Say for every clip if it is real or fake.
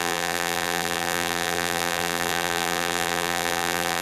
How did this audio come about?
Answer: fake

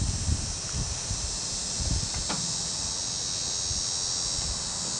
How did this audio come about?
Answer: real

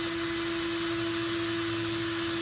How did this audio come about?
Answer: real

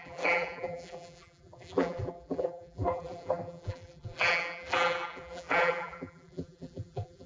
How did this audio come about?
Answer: fake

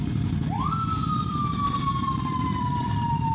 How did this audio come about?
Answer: fake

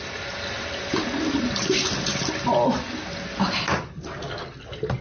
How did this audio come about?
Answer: real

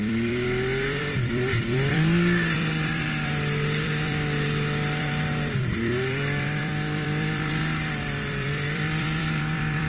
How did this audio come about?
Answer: fake